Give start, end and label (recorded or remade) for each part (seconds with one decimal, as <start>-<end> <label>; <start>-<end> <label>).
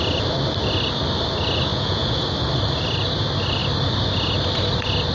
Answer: 0.0-1.7 recorded; 1.7-2.2 remade; 2.2-5.1 recorded